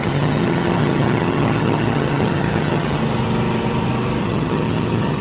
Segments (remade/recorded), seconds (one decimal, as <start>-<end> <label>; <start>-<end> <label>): 0.0-3.0 remade; 3.0-4.2 recorded; 4.2-5.2 remade